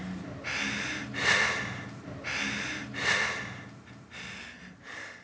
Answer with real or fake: real